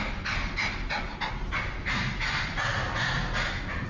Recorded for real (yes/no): yes